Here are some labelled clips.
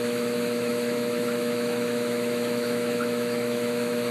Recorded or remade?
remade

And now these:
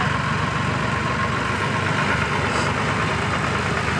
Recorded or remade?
recorded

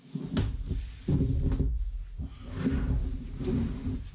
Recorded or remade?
recorded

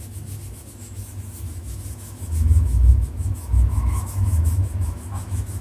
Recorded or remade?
remade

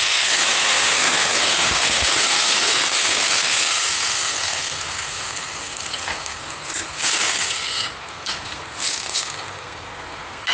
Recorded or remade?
remade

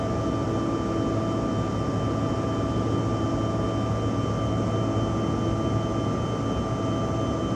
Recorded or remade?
recorded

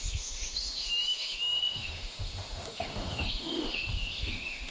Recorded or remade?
remade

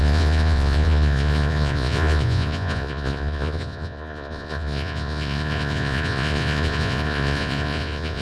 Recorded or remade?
remade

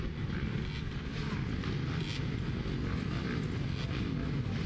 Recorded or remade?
recorded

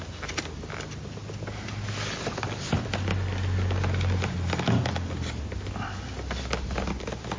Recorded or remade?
recorded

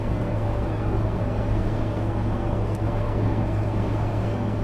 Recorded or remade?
remade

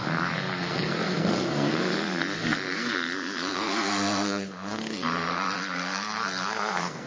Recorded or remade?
remade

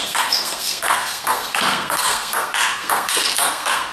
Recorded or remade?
remade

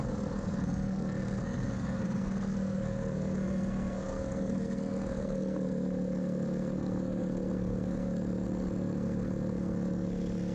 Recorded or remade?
remade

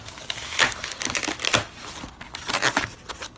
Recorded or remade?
recorded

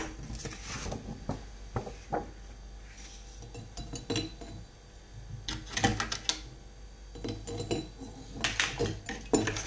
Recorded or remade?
recorded